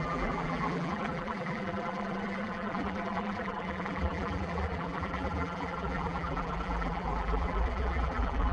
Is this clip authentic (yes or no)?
no